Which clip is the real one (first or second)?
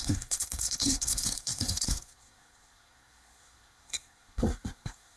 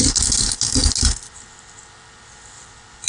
second